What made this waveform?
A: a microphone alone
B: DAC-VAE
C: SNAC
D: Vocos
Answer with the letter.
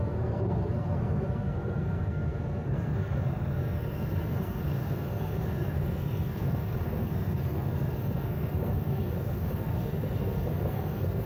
C